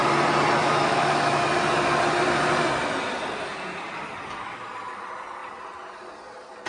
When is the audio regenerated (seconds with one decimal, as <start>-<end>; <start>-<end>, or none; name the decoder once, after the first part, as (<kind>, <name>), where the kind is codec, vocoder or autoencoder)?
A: 0.6-1.4 (autoencoder, DAC-VAE)